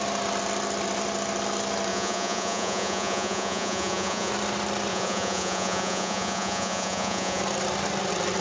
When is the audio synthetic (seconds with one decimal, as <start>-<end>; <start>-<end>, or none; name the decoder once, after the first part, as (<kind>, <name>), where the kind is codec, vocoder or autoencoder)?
1.9-4.3 (vocoder, Vocos); 4.9-7.4